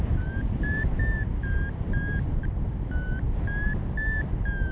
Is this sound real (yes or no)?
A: yes